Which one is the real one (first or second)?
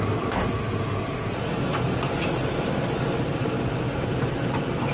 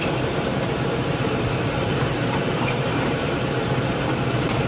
first